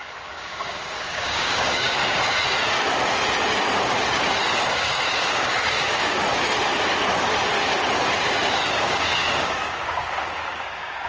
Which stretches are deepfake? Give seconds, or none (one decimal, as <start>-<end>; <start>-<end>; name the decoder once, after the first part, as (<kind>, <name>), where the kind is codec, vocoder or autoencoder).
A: 0.0-2.0 (codec, DAC); 4.7-6.2; 8.8-11.1